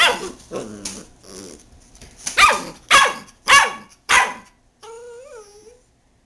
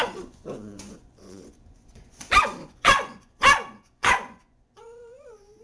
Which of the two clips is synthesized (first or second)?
second